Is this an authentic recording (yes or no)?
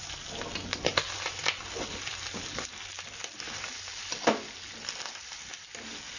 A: yes